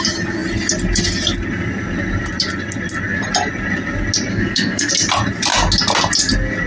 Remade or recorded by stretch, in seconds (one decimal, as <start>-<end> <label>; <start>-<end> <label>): 0.0-4.3 recorded; 4.3-4.9 remade; 4.9-6.7 recorded